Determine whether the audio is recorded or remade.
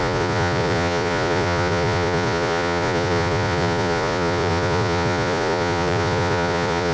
remade